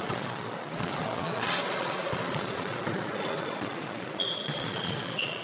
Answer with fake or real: fake